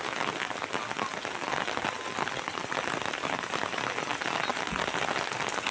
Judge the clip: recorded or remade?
recorded